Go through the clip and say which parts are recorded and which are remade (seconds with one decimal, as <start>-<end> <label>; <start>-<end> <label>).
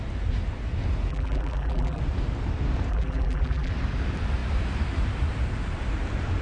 0.0-1.1 recorded; 1.1-2.0 remade; 2.0-2.9 recorded; 2.9-3.7 remade; 3.7-6.4 recorded